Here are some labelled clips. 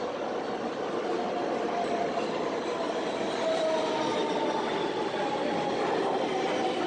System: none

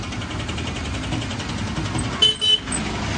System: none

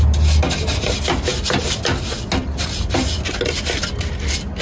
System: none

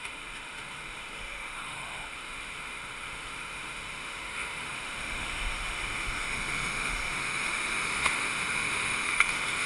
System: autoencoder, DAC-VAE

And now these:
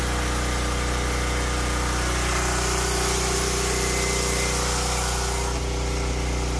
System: none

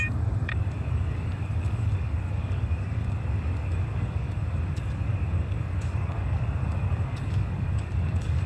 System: codec, DAC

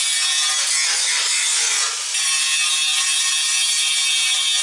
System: none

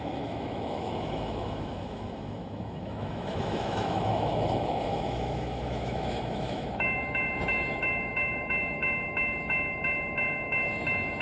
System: autoencoder, DAC-VAE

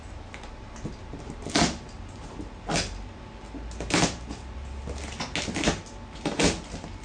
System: none